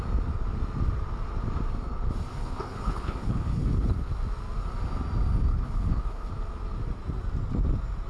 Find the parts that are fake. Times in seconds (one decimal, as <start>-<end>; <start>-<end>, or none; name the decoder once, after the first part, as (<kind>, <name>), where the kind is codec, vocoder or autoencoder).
2.3-4.1 (codec, HILCodec); 5.5-6.3